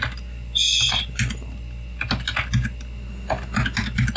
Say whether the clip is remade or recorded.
recorded